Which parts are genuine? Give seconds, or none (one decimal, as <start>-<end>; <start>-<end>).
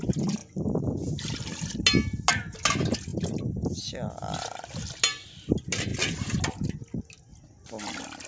0.0-8.3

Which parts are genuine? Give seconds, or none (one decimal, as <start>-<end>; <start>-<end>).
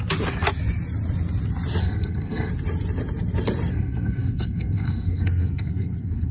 0.0-1.8; 2.5-3.7